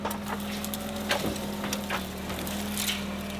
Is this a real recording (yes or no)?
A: yes